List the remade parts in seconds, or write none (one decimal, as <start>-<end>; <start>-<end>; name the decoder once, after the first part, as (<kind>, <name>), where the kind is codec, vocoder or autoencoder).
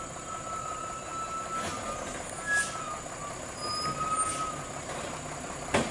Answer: none